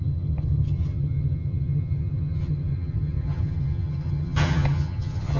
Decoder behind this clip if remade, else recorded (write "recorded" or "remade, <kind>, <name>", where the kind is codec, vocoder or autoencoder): remade, vocoder, HiFi-GAN